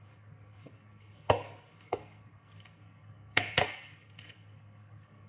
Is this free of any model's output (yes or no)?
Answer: no